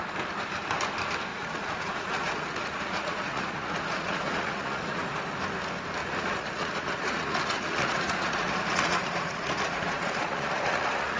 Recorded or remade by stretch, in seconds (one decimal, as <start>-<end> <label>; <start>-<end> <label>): 0.0-1.3 recorded; 1.3-5.0 remade; 5.0-6.0 recorded; 6.0-11.2 remade